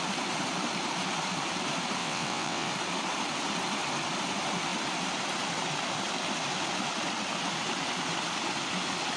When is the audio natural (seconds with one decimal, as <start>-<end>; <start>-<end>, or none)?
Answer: 0.0-2.0; 2.7-9.2